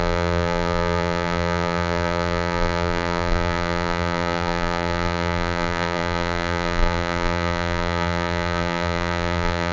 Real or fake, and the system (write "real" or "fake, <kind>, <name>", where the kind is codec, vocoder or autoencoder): fake, vocoder, BigVGAN v2